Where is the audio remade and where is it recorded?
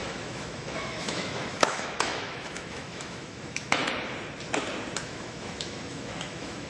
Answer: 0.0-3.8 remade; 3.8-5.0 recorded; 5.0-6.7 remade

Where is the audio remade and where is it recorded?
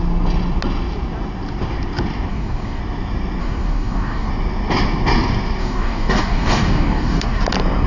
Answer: 0.0-2.3 recorded; 2.3-2.8 remade; 2.8-3.4 recorded; 3.4-4.3 remade; 4.3-5.6 recorded; 5.6-7.4 remade; 7.4-7.9 recorded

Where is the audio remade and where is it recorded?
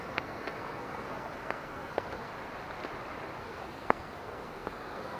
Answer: 0.0-2.3 remade; 2.3-3.4 recorded; 3.4-5.2 remade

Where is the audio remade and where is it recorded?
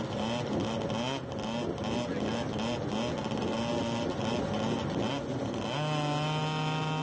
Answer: 0.0-7.0 recorded